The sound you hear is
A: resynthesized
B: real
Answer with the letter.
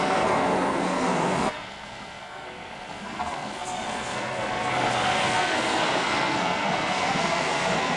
A